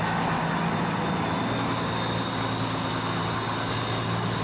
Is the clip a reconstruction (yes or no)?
no